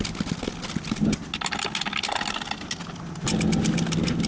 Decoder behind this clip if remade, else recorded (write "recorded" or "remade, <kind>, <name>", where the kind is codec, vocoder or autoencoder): recorded